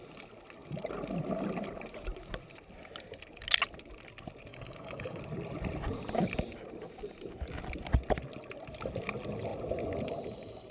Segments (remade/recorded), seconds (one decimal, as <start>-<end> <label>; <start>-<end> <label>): 0.0-4.5 recorded; 4.5-5.2 remade; 5.2-10.7 recorded